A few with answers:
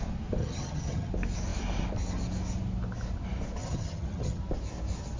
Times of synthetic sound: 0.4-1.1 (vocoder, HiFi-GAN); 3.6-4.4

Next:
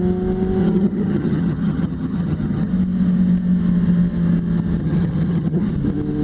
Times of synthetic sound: 0.6-2.7 (vocoder, HiFi-GAN); 4.8-5.7

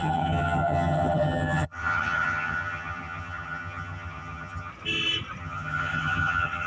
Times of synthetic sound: 0.0-4.7 (vocoder, HiFi-GAN); 5.4-6.7